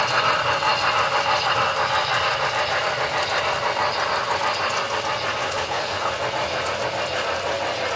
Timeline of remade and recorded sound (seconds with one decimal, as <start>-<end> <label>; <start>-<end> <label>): 0.0-5.4 recorded; 5.4-6.1 remade; 6.1-8.0 recorded